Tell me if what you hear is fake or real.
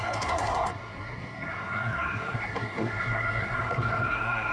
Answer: fake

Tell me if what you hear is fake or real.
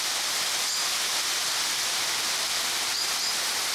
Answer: real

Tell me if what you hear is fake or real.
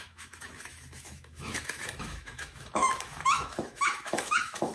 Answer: fake